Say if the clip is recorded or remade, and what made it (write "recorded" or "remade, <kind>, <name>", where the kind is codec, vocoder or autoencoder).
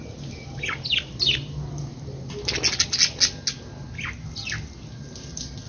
recorded